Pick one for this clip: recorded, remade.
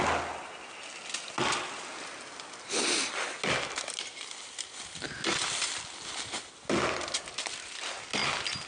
recorded